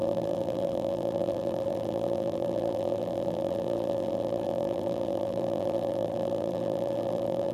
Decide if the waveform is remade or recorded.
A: remade